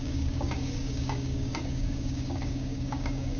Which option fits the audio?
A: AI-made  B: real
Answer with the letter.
A